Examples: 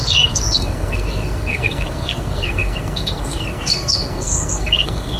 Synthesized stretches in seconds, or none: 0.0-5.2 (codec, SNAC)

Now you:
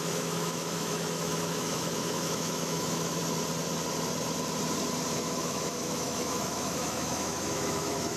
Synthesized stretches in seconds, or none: 0.0-3.2 (autoencoder, DAC-VAE); 5.1-8.2

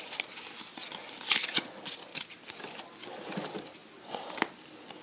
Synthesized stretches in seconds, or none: none